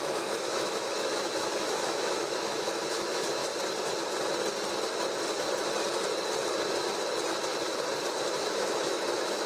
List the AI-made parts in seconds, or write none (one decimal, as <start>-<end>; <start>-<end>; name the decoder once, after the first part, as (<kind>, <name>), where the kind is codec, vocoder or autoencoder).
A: 0.0-3.4 (autoencoder, DAC-VAE); 8.3-9.5